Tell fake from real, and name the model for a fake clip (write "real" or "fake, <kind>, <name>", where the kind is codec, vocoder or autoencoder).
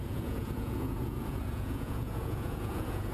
fake, vocoder, Vocos